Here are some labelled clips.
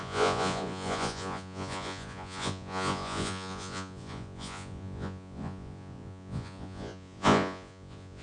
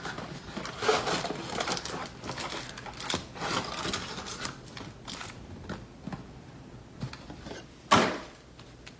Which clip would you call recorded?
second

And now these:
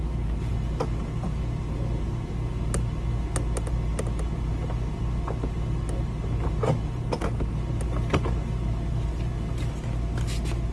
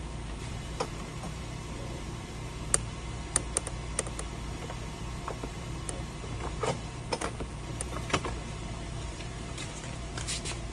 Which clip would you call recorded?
first